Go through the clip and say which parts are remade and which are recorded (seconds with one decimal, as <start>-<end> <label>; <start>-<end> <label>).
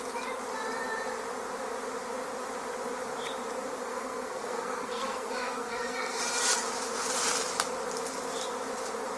0.0-3.8 recorded; 3.8-6.2 remade; 6.2-9.2 recorded